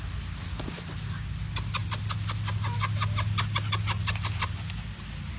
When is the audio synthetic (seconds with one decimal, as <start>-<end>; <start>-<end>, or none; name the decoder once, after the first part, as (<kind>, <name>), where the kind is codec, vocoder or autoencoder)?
none